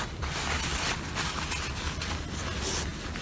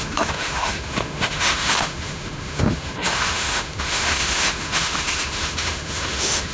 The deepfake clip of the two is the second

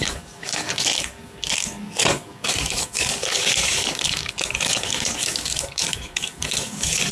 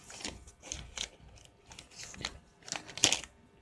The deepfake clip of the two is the first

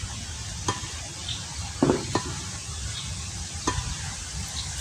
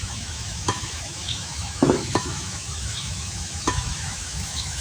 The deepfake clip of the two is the second